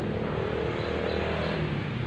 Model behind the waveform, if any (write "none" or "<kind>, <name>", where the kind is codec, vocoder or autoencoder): none